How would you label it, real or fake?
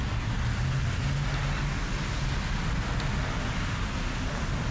real